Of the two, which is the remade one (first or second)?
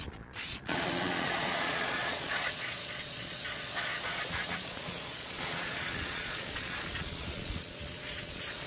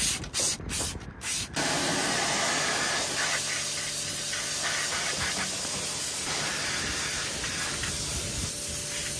first